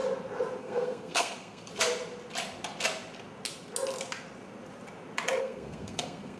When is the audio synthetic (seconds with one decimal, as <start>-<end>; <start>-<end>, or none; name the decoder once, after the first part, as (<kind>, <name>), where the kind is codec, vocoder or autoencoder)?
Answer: 0.6-1.7 (codec, SNAC); 5.4-6.4